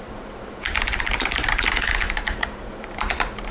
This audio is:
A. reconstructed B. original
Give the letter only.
A